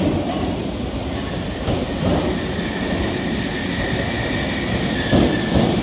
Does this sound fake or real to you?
real